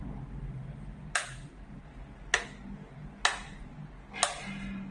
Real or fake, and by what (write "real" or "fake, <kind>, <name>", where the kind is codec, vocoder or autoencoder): real